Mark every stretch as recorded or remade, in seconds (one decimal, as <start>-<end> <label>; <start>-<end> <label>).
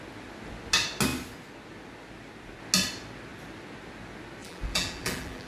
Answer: 0.0-4.4 recorded; 4.4-5.5 remade